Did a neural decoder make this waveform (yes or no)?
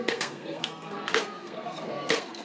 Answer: yes